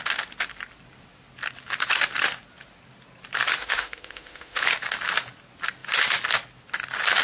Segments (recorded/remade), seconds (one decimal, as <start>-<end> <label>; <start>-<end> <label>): 0.0-3.6 recorded; 3.6-4.6 remade; 4.6-7.2 recorded